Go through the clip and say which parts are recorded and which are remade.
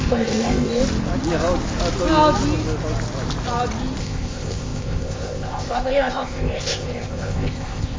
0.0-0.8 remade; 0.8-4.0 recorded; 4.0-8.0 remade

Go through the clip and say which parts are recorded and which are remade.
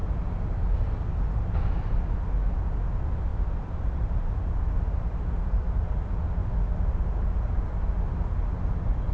0.0-1.4 remade; 1.4-3.3 recorded; 3.3-5.8 remade; 5.8-9.1 recorded